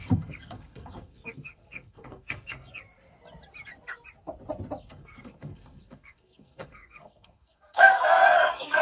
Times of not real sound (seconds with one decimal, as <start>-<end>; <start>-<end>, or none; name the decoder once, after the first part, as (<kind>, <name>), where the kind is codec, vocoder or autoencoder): 0.0-2.8 (codec, SNAC); 4.9-8.8